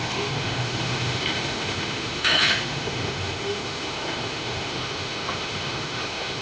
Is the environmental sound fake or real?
fake